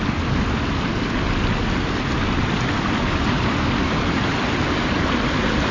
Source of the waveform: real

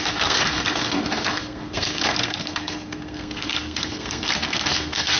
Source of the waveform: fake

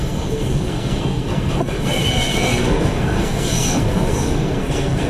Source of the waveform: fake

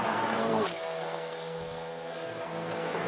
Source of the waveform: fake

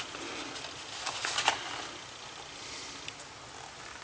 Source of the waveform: real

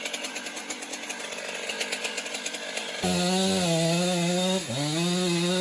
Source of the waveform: real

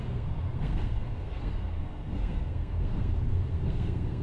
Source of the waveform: fake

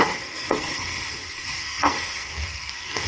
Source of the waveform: fake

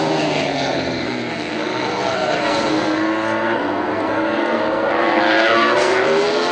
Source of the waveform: fake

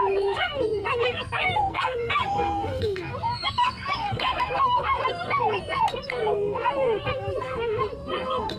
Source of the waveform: fake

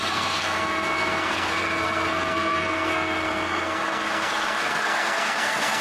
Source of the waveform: fake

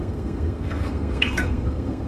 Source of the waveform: fake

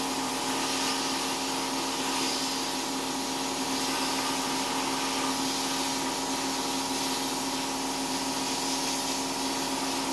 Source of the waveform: real